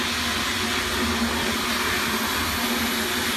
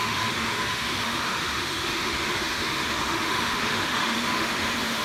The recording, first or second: first